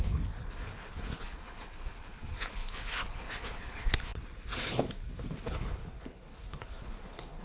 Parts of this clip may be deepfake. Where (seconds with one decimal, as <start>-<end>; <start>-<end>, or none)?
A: 0.0-7.4